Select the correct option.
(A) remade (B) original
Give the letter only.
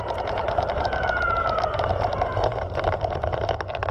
A